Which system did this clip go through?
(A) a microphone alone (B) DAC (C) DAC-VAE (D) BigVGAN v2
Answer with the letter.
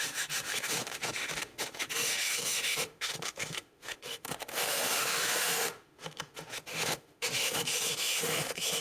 C